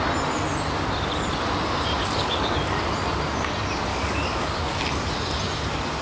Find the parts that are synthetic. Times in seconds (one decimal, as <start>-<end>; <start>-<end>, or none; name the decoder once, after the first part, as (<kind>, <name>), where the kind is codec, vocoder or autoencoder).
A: 2.0-2.9 (codec, DAC); 3.9-5.0

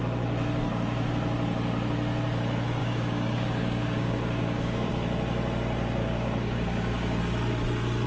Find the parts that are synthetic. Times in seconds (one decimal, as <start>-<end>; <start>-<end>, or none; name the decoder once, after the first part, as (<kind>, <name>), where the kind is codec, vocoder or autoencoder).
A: 2.8-4.9 (codec, DAC); 6.0-7.2

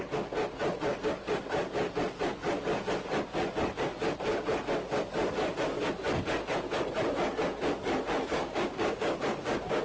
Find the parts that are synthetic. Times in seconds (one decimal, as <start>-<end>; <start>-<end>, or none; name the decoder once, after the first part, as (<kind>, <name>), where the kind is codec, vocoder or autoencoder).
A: 8.3-9.8 (codec, DAC)